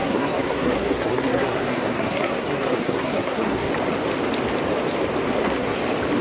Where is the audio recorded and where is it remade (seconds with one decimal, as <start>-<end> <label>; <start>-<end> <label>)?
0.0-3.7 remade; 3.7-5.3 recorded; 5.3-5.8 remade; 5.8-6.2 recorded